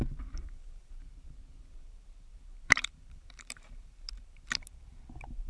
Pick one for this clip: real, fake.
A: fake